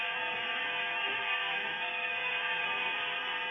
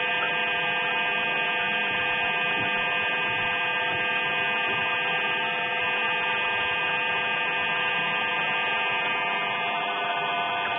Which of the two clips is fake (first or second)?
first